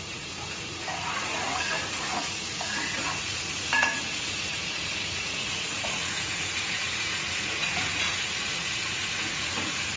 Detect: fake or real fake